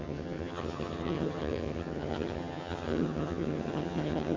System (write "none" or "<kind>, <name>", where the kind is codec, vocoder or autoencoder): vocoder, HiFi-GAN